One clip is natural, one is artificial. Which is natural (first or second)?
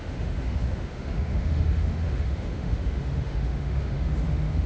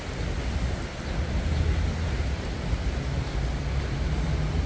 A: second